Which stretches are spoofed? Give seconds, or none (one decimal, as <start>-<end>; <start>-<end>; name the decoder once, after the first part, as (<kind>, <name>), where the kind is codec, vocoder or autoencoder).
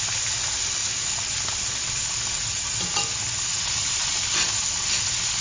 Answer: none